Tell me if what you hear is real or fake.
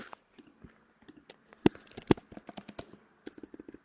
real